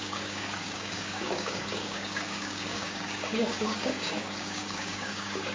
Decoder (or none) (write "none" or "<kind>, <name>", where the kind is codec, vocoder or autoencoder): codec, DAC